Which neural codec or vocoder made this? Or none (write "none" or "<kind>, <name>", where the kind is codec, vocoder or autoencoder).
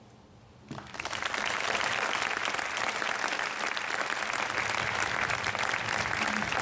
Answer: none